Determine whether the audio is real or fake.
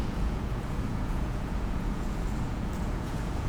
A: fake